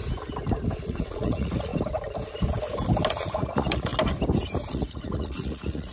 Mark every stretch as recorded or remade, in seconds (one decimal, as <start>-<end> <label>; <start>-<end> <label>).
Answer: 0.0-0.8 recorded; 0.8-1.7 remade; 1.7-3.1 recorded; 3.1-3.9 remade; 3.9-4.7 recorded; 4.7-5.9 remade